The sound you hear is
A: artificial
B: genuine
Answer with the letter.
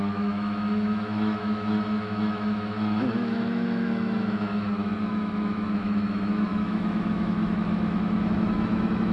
A